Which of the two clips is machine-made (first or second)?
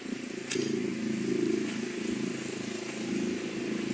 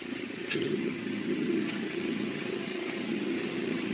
second